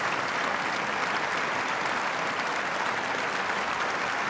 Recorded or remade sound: recorded